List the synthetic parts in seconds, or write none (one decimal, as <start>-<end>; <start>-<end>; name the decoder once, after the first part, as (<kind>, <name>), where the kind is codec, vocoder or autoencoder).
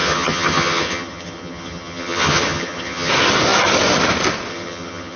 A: 0.0-3.1 (vocoder, HiFi-GAN); 4.5-5.2